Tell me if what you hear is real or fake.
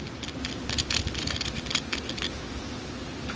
real